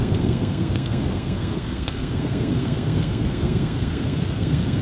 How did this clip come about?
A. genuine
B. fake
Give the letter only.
B